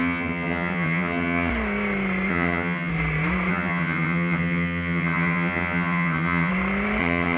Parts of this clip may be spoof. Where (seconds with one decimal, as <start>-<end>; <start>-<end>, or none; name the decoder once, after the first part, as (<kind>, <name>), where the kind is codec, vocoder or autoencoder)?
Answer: 0.0-1.5 (vocoder, HiFi-GAN); 2.3-2.9; 3.5-6.5; 7.0-7.4